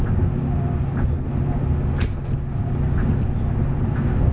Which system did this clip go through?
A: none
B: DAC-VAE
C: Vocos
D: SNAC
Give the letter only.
A